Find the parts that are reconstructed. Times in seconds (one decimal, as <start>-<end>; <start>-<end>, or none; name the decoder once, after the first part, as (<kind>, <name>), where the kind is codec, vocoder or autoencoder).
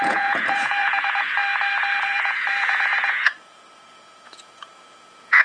0.0-1.4 (vocoder, Vocos); 2.0-5.4